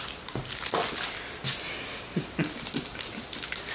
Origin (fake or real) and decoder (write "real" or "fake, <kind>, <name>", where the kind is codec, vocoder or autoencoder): real